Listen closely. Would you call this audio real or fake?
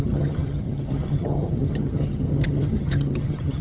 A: fake